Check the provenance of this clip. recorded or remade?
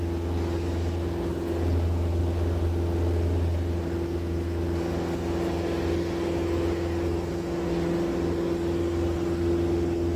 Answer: recorded